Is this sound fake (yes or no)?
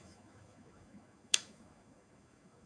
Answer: yes